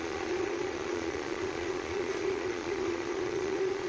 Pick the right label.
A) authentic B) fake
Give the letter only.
B